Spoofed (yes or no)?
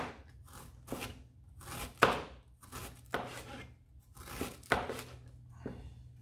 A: no